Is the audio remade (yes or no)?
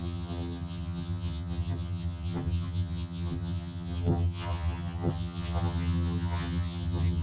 yes